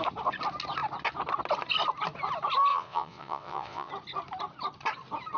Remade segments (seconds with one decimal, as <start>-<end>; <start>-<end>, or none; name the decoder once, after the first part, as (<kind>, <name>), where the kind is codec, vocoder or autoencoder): 2.7-3.9 (vocoder, WaveNeXt)